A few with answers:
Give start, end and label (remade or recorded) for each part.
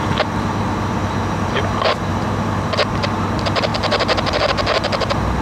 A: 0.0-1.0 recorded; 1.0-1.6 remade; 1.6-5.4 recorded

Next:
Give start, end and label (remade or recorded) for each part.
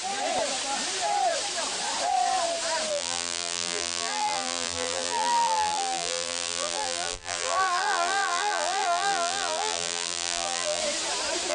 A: 0.0-2.9 recorded; 2.9-10.8 remade; 10.8-11.5 recorded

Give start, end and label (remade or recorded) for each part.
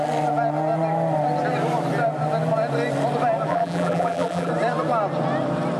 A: 0.0-3.5 recorded; 3.5-4.5 remade; 4.5-5.8 recorded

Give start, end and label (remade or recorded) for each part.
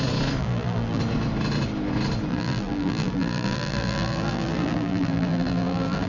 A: 0.0-0.4 recorded; 0.4-1.0 remade; 1.0-2.3 recorded; 2.3-6.1 remade